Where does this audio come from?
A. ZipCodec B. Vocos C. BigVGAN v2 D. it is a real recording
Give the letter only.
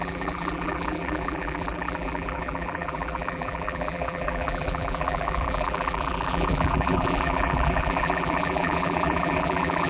C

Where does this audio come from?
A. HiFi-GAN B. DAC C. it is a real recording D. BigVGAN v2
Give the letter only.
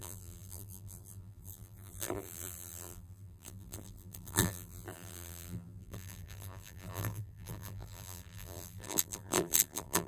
D